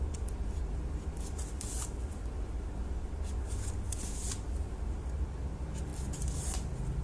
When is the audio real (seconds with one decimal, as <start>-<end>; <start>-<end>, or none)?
0.0-7.0